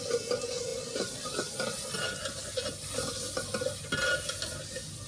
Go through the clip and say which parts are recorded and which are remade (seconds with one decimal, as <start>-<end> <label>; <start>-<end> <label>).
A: 0.0-5.1 recorded